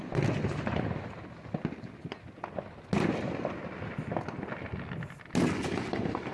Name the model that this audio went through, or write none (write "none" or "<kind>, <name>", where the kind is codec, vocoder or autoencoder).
none